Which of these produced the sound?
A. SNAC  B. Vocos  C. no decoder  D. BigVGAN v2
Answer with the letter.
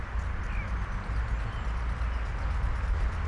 C